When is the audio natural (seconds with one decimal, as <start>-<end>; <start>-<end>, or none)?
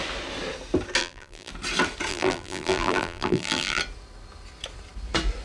0.0-1.0; 1.5-2.1; 3.8-5.4